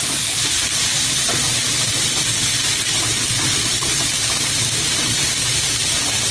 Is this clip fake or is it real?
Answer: fake